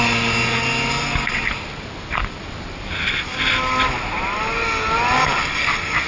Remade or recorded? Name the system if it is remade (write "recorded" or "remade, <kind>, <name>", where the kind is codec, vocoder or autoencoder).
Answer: recorded